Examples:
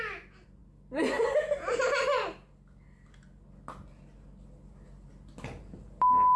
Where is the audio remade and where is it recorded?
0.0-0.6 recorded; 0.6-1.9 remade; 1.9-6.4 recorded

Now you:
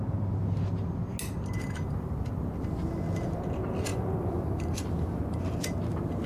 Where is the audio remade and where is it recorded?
0.0-3.9 recorded; 3.9-5.6 remade; 5.6-6.3 recorded